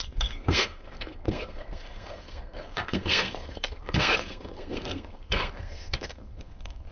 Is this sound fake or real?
fake